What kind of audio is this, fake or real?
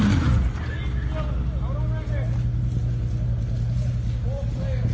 real